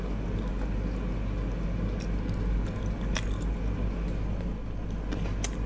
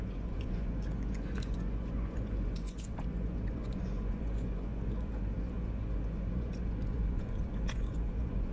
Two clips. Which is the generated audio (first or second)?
second